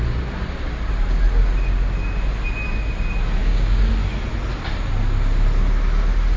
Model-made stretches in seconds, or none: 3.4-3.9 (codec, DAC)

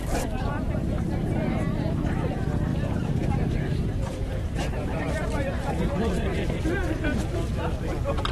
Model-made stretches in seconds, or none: 0.0-2.3 (vocoder, BigVGAN v2); 2.7-5.7

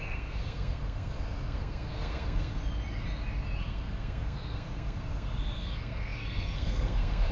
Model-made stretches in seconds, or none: 0.0-2.6 (codec, SNAC); 3.6-7.3

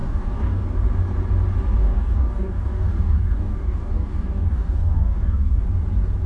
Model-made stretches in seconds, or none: 0.0-0.6 (codec, DAC); 1.8-5.6

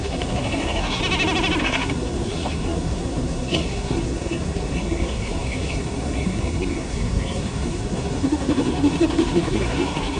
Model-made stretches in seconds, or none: 0.0-1.0 (codec, SNAC); 1.6-10.2

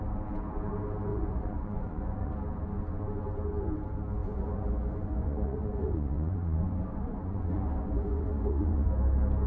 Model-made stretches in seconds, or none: 1.1-2.3 (vocoder, Vocos); 4.2-8.9

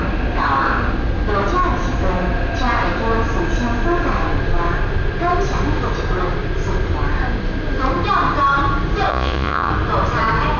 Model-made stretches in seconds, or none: 9.1-9.7 (vocoder, Vocos)

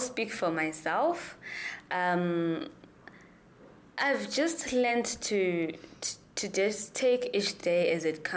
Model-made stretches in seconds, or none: none